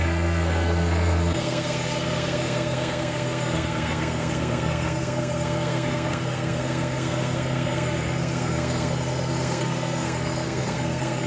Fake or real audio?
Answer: fake